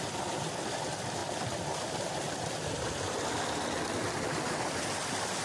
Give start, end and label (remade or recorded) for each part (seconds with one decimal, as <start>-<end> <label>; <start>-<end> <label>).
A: 0.0-5.4 remade